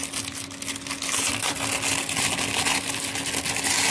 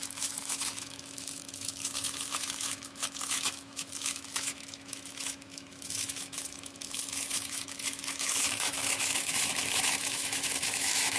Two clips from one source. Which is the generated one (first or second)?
second